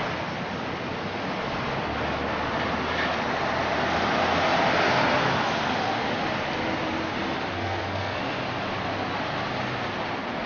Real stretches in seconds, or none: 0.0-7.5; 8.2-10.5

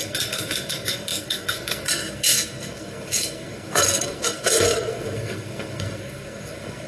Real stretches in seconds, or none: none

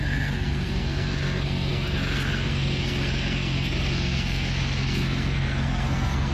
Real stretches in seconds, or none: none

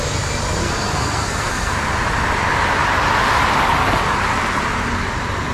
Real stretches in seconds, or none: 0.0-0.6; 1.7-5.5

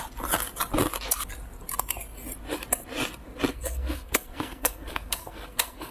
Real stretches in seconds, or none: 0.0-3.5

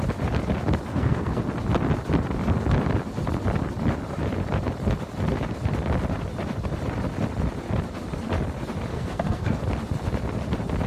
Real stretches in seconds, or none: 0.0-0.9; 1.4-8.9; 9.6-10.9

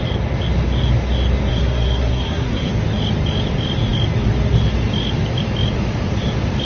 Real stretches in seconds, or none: 0.0-1.5; 2.7-6.6

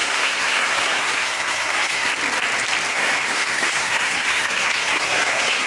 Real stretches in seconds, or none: 2.1-2.9